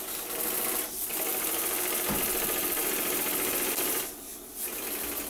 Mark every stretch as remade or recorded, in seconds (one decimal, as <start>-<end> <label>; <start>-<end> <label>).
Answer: 0.0-5.3 recorded